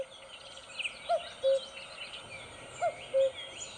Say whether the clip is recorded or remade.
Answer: recorded